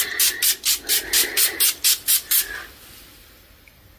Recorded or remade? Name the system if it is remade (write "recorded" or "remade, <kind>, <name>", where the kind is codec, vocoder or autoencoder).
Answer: recorded